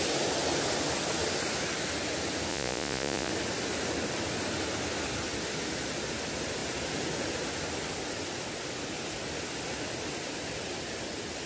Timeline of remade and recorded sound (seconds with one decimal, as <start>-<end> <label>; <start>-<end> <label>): 0.0-2.5 recorded; 2.5-3.3 remade; 3.3-11.5 recorded